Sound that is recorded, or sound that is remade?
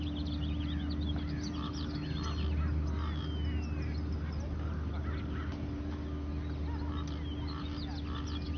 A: recorded